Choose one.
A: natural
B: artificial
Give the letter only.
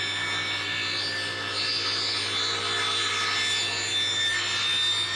A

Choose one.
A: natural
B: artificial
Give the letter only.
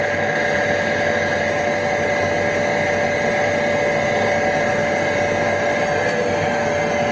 A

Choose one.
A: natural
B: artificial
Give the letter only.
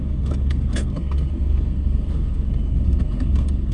B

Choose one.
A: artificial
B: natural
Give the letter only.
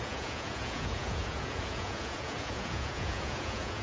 A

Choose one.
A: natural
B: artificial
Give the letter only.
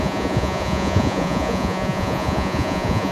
B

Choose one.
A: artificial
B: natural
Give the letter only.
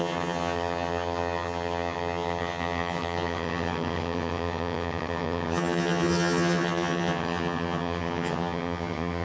A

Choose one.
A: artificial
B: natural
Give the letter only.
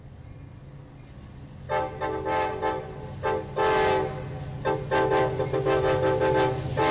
B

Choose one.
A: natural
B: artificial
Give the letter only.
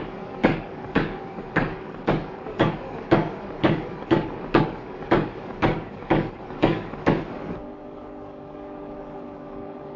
B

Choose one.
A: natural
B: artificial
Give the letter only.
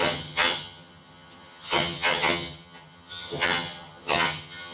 B